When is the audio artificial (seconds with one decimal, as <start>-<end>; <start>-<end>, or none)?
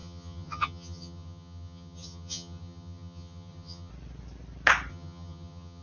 0.0-3.9; 4.9-5.8